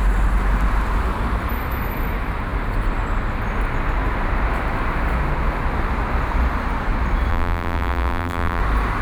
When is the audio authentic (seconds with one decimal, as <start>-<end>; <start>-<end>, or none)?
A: 0.0-7.3; 8.6-9.0